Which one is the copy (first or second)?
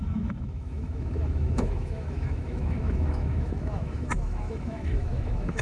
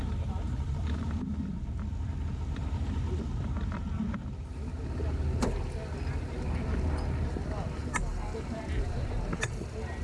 first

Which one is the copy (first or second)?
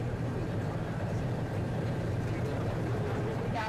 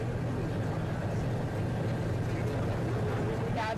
first